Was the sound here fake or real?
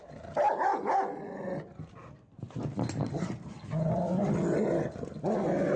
real